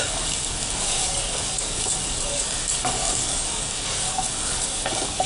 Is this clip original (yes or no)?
no